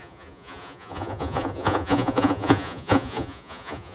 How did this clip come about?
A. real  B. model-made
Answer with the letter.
B